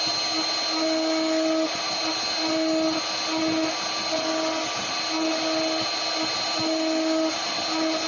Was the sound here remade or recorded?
recorded